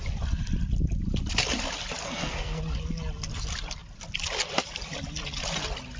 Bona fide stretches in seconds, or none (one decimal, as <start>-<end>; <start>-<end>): 0.0-2.0; 2.6-6.0